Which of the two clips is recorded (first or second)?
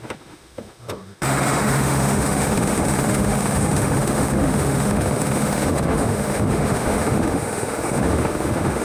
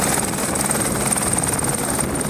second